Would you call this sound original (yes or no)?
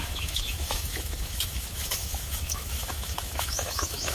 no